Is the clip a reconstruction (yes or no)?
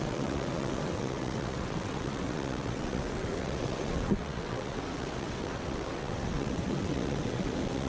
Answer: yes